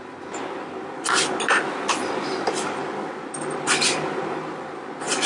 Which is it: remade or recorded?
recorded